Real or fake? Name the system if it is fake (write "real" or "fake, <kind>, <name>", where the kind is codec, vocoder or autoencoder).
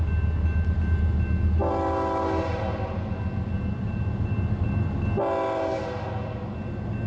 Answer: real